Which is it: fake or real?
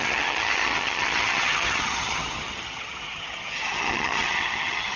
fake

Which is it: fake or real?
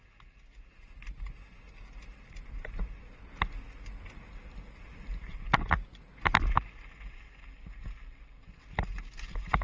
real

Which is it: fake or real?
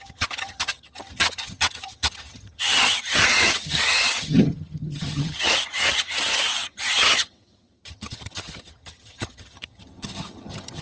fake